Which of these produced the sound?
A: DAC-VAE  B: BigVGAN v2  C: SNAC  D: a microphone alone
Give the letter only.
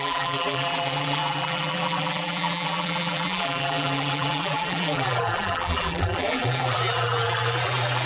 B